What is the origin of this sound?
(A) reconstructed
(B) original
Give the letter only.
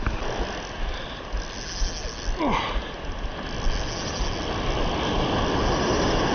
B